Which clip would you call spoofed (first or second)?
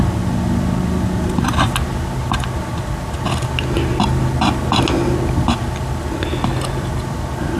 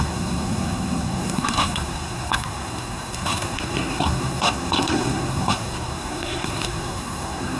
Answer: second